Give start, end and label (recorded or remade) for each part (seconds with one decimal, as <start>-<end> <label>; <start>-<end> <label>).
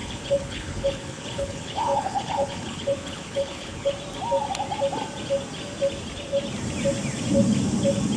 0.0-3.9 remade; 3.9-8.2 recorded